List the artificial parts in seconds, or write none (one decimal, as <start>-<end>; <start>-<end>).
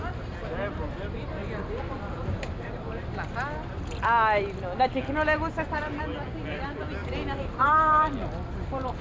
none